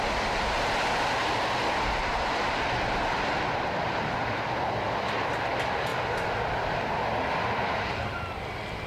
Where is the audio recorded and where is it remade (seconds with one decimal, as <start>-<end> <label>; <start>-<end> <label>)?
0.0-8.9 recorded